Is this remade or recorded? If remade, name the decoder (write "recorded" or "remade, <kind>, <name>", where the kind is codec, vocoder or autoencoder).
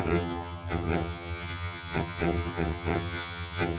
remade, vocoder, HiFi-GAN